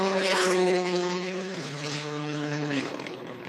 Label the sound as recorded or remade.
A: remade